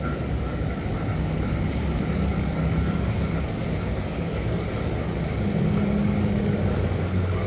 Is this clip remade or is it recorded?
remade